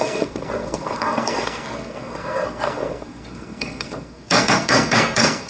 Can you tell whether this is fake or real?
fake